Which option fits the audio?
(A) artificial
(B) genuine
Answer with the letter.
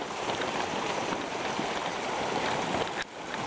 B